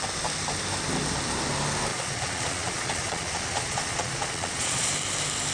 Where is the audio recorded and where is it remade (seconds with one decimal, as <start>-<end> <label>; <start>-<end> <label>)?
0.0-1.9 recorded; 1.9-4.9 remade; 4.9-5.5 recorded